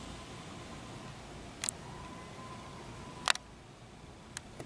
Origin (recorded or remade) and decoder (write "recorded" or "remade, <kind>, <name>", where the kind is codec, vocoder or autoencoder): recorded